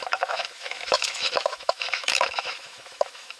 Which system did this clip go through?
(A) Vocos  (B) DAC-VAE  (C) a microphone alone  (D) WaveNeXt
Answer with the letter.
B